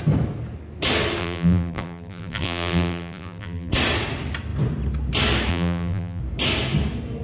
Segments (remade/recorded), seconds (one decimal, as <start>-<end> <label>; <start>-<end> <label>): 0.0-1.2 recorded; 1.2-3.7 remade; 3.7-5.5 recorded; 5.5-6.2 remade; 6.2-7.2 recorded